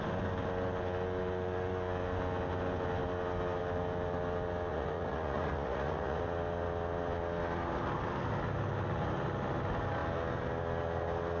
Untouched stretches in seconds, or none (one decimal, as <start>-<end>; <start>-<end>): 0.0-4.7; 6.2-11.4